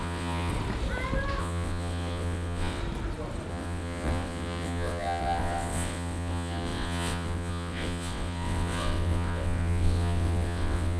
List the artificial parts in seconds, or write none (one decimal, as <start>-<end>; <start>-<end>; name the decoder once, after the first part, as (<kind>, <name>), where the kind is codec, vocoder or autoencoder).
0.0-0.5 (vocoder, WaveNeXt); 1.4-2.8; 3.5-11.0